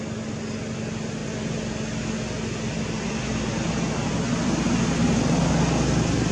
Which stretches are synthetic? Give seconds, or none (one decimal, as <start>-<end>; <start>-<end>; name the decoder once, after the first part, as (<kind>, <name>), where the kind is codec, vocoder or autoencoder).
none